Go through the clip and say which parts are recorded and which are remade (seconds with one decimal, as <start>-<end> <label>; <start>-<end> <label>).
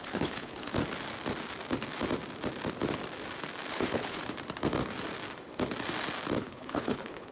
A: 0.0-0.8 remade; 0.8-3.7 recorded; 3.7-4.2 remade; 4.2-6.4 recorded; 6.4-7.3 remade